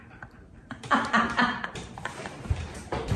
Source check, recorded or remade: remade